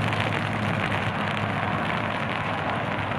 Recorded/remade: recorded